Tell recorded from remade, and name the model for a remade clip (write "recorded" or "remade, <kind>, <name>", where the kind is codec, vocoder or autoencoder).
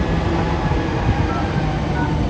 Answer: recorded